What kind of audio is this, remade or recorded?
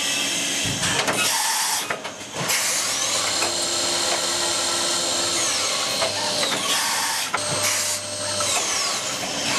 recorded